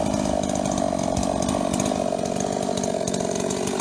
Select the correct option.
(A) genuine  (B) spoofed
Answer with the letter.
A